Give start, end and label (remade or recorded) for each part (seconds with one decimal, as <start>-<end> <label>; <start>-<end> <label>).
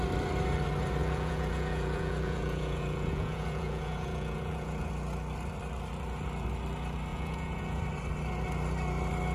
0.0-1.0 recorded; 1.0-4.9 remade; 4.9-7.1 recorded; 7.1-7.8 remade; 7.8-9.3 recorded